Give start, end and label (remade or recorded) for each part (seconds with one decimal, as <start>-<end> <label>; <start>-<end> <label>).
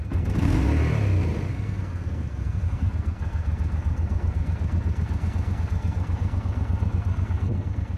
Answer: 0.0-0.6 remade; 0.6-1.5 recorded; 1.5-8.0 remade